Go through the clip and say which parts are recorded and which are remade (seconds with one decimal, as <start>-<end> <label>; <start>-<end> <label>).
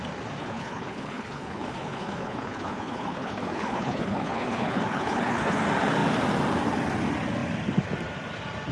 0.0-0.4 recorded; 0.4-5.6 remade; 5.6-8.7 recorded